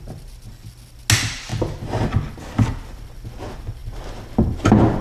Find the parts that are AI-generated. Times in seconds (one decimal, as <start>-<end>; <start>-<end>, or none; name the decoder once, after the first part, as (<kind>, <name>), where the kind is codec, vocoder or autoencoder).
none